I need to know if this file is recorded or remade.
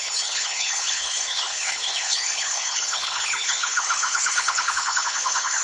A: remade